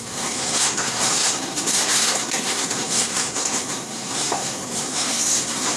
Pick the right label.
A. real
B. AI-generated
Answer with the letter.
B